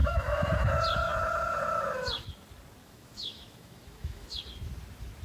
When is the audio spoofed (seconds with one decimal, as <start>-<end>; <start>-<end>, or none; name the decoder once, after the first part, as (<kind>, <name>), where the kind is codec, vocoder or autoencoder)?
0.0-0.7 (autoencoder, DAC-VAE); 2.8-4.4